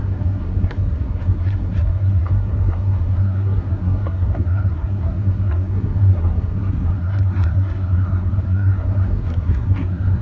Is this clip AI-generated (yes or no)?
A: yes